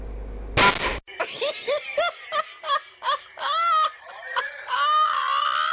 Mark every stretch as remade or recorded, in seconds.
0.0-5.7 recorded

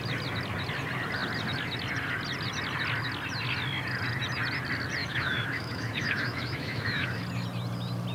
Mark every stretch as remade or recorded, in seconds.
0.0-5.0 recorded; 5.0-7.2 remade; 7.2-8.1 recorded

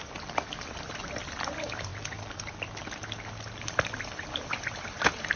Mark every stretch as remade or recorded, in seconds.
0.0-5.4 recorded

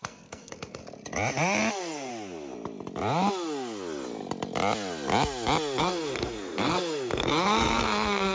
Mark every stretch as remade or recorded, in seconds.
0.0-0.8 remade; 0.8-1.7 recorded; 1.7-2.1 remade; 2.1-5.8 recorded; 5.8-8.3 remade

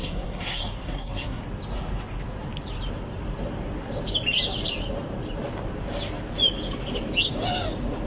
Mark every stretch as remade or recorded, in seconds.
0.0-1.4 remade; 1.4-8.1 recorded

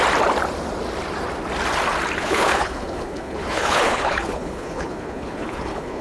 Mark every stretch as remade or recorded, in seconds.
0.0-2.2 recorded; 2.2-6.0 remade

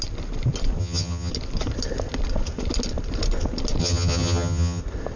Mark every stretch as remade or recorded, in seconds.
0.0-0.8 recorded; 0.8-1.3 remade; 1.3-3.8 recorded; 3.8-4.8 remade; 4.8-5.2 recorded

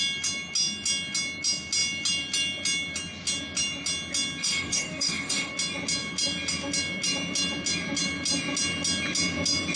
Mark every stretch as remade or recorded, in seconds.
0.0-4.4 recorded; 4.4-5.5 remade; 5.5-9.8 recorded